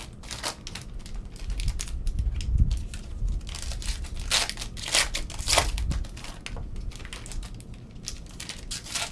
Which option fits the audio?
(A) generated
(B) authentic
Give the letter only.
B